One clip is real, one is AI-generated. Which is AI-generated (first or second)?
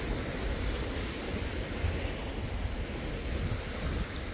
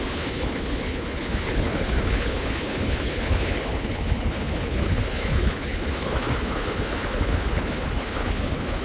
second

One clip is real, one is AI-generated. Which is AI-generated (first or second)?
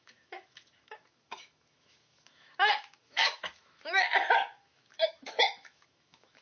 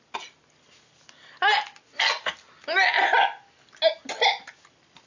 first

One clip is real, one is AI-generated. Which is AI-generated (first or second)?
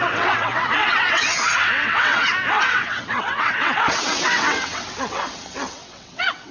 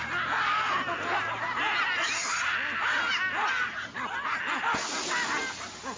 first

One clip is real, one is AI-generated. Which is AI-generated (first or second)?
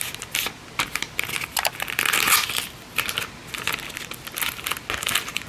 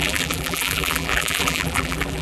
second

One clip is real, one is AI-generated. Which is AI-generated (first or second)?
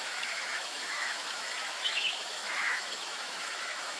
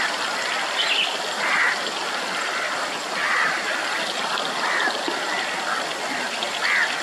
first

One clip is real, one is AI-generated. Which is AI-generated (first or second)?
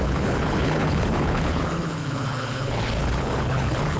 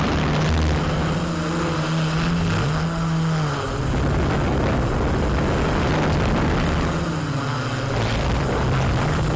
first